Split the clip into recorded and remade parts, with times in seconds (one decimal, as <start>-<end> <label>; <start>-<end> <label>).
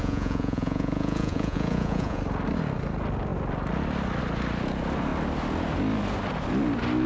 0.0-2.2 remade; 2.2-7.1 recorded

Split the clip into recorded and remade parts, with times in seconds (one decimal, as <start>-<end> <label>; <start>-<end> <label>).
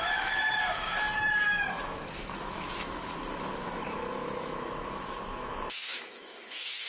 0.0-6.9 remade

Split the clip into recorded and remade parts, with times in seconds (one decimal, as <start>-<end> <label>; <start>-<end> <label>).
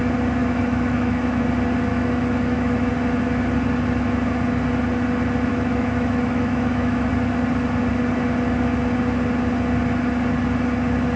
0.0-0.4 recorded; 0.4-1.4 remade; 1.4-1.9 recorded; 1.9-2.9 remade; 2.9-5.5 recorded; 5.5-7.1 remade; 7.1-11.2 recorded